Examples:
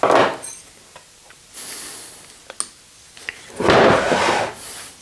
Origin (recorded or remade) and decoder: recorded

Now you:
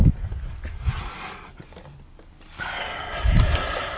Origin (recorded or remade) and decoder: recorded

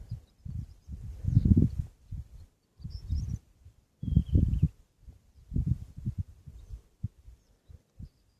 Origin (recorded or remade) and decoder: remade, vocoder, BigVGAN v2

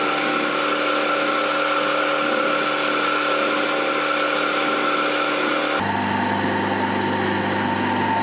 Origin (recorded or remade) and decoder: recorded